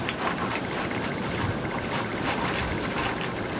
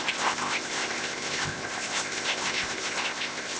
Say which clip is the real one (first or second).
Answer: first